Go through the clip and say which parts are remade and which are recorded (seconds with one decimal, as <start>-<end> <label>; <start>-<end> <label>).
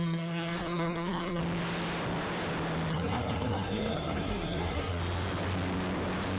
0.0-1.4 remade; 1.4-2.9 recorded; 2.9-5.0 remade; 5.0-6.4 recorded